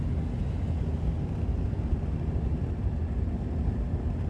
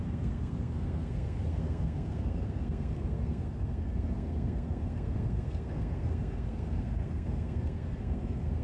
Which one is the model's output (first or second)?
second